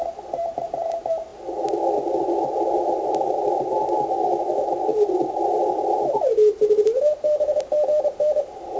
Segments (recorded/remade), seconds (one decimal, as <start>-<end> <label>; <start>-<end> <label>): 0.0-1.3 remade; 1.3-2.2 recorded; 2.2-8.8 remade